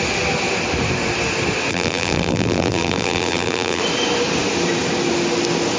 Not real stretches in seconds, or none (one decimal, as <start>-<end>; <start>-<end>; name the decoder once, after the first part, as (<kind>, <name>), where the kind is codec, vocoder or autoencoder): 1.7-3.8 (vocoder, BigVGAN v2)